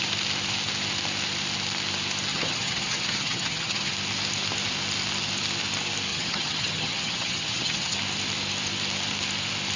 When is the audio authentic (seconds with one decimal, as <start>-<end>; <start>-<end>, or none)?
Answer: 0.0-2.3; 3.9-6.1; 8.0-9.8